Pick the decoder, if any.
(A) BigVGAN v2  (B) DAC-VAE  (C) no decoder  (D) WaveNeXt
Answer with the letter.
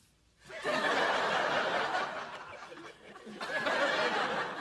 C